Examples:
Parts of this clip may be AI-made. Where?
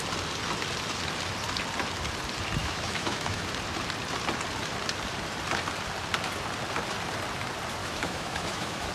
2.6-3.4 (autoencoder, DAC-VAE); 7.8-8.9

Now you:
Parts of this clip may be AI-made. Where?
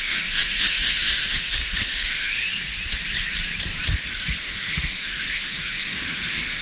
0.0-2.4 (autoencoder, DAC-VAE); 4.4-6.6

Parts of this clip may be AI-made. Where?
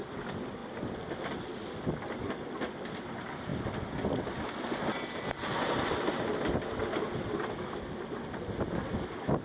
none